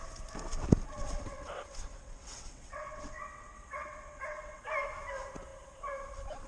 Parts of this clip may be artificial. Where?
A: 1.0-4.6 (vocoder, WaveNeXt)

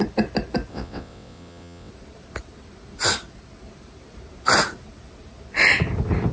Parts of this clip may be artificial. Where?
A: 0.7-1.9 (vocoder, WaveNeXt)

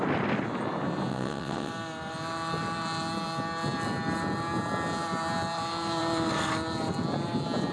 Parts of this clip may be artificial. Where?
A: 1.1-1.7 (vocoder, WaveNeXt)

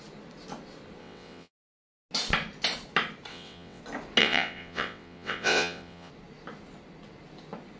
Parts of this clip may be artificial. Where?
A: 1.0-1.5 (vocoder, WaveNeXt); 3.3-3.8; 4.2-6.1

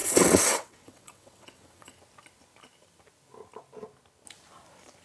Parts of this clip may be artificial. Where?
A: 0.0-2.0 (vocoder, WaveNeXt)